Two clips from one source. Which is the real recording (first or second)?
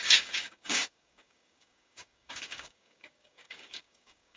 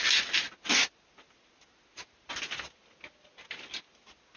second